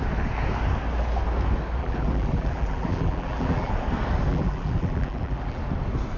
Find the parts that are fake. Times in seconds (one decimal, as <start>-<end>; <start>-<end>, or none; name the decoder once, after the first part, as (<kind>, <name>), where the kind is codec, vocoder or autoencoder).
1.8-3.7 (vocoder, BigVGAN v2); 4.3-5.6